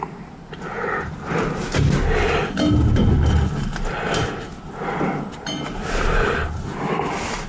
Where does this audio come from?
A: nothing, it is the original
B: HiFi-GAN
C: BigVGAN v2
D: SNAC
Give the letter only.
A